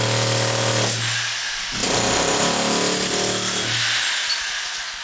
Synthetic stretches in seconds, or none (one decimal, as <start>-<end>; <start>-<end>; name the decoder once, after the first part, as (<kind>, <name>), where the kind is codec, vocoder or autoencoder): none

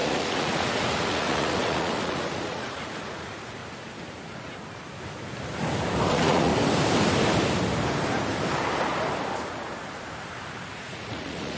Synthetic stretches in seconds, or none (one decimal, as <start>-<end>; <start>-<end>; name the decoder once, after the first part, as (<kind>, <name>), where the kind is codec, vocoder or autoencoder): 0.0-3.6 (vocoder, Vocos); 6.1-6.5; 10.8-11.6

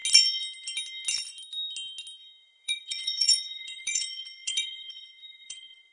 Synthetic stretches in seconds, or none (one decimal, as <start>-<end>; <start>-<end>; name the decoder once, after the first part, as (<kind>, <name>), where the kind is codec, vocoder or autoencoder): 2.4-5.9 (vocoder, Vocos)

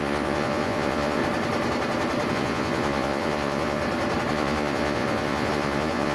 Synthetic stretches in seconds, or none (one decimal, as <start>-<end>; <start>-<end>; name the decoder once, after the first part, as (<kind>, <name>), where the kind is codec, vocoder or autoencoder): 0.0-1.2 (vocoder, Vocos); 2.3-3.8; 4.3-6.1